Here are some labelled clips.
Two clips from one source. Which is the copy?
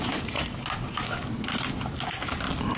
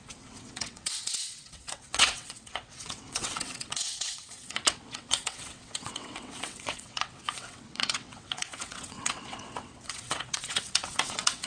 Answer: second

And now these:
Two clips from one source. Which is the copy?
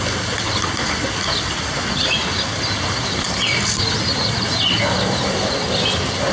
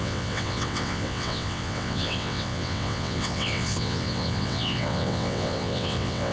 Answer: second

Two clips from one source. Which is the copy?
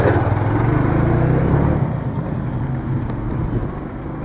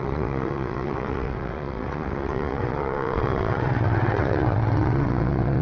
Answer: second